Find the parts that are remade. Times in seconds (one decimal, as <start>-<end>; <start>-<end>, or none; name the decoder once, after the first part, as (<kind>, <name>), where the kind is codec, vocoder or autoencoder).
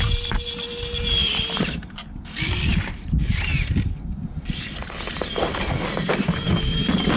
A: 1.2-2.9 (vocoder, BigVGAN v2)